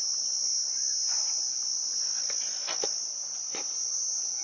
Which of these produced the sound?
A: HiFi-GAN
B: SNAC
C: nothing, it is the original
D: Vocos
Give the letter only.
C